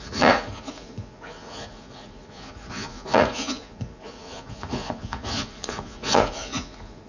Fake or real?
fake